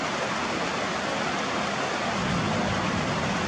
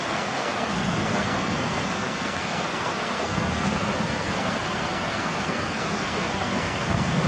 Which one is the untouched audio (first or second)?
first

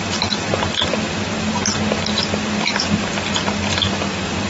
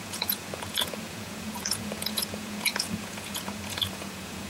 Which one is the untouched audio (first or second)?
first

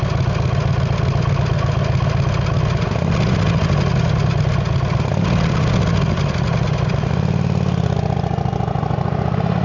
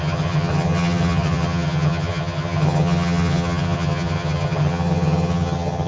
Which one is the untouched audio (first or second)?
first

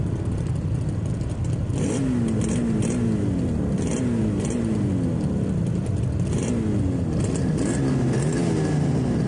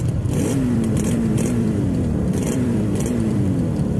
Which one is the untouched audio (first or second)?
first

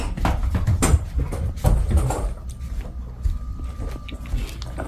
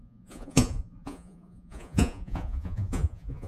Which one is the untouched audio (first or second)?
first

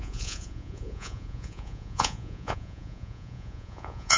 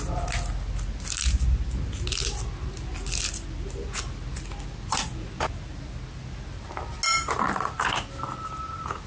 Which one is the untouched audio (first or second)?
second